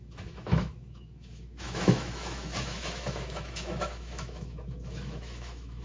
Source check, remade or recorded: remade